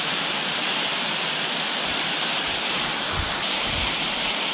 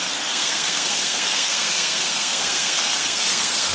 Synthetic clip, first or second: second